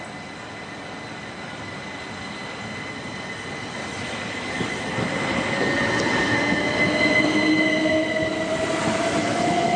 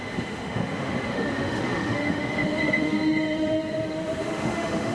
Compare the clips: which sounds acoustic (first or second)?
first